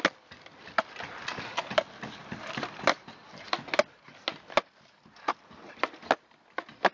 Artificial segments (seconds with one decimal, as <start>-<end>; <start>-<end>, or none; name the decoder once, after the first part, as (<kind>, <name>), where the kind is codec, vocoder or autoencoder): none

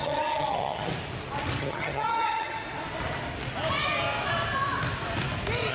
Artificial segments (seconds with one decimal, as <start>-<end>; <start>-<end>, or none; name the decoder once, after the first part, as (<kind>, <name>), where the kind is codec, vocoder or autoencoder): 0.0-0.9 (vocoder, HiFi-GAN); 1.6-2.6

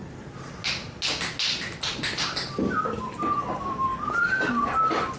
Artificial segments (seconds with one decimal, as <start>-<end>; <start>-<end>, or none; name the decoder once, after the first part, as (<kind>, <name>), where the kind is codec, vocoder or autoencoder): none

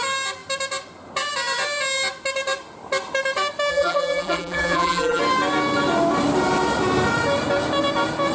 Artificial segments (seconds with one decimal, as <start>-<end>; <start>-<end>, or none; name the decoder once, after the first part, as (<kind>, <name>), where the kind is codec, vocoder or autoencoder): 3.7-5.2 (vocoder, BigVGAN v2)